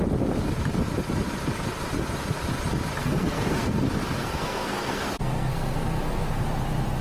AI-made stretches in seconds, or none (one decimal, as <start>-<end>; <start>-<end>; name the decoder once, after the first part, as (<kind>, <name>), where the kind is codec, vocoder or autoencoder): 3.0-3.8 (codec, SNAC); 4.2-6.4